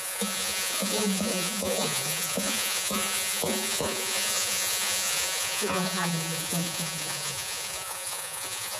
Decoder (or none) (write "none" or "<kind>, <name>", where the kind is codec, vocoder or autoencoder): vocoder, Vocos